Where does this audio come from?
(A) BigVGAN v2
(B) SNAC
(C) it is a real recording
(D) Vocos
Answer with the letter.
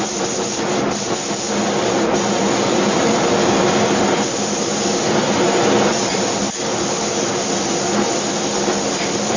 C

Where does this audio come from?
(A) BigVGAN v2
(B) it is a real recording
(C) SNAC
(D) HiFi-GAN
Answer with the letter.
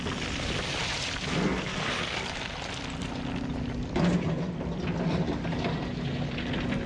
B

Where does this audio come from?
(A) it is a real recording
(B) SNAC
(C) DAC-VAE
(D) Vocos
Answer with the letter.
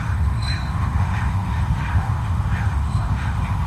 C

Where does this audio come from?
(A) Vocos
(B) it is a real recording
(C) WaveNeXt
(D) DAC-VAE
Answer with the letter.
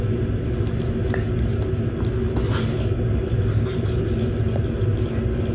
B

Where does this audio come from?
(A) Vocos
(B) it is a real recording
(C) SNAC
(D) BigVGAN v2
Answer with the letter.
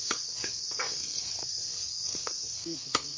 C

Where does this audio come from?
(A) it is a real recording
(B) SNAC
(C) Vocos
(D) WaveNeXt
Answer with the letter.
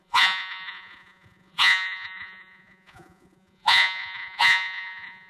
C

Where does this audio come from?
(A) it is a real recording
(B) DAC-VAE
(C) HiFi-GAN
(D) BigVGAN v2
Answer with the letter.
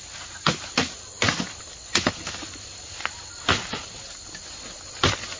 A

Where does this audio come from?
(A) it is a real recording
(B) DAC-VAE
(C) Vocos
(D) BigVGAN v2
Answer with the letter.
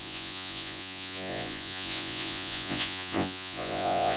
C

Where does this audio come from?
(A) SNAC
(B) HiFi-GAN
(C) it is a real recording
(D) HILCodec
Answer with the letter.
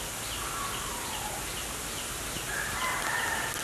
C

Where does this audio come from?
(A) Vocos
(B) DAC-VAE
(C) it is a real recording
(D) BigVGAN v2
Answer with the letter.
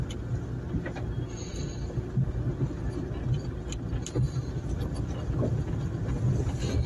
C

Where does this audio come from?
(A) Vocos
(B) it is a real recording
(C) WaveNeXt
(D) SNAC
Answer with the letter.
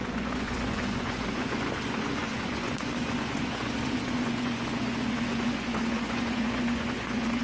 A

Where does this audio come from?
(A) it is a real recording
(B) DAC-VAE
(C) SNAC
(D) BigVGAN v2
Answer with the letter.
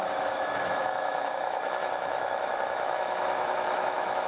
B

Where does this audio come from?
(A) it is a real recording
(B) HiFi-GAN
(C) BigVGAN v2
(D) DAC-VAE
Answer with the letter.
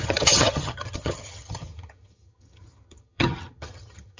B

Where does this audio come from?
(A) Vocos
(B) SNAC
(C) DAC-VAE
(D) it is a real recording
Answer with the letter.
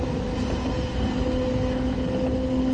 D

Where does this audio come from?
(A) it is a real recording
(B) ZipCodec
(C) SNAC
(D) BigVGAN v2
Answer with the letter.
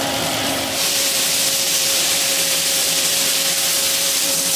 D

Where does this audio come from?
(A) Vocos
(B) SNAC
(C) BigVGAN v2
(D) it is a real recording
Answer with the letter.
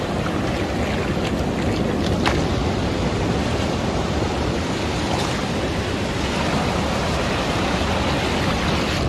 D